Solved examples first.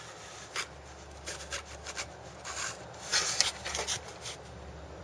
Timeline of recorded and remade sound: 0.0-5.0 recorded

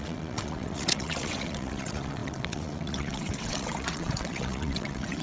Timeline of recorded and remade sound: 0.0-5.2 remade

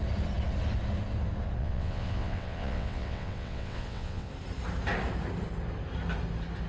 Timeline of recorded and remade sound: 0.0-1.6 recorded; 1.6-4.3 remade; 4.3-6.7 recorded

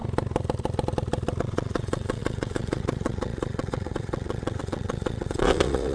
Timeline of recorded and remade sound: 0.0-1.4 recorded; 1.4-5.9 remade

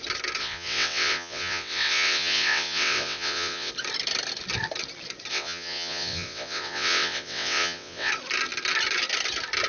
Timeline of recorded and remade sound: 0.0-0.4 recorded; 0.4-3.7 remade; 3.7-5.3 recorded; 5.3-8.1 remade; 8.1-9.7 recorded

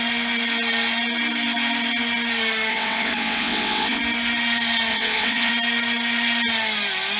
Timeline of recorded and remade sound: 0.0-2.7 recorded; 2.7-4.0 remade; 4.0-4.9 recorded; 4.9-5.5 remade; 5.5-7.2 recorded

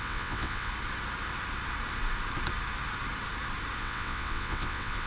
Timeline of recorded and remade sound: 0.0-0.7 remade; 0.7-3.8 recorded; 3.8-5.1 remade

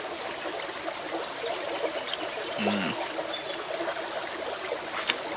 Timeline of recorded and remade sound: 0.0-5.4 recorded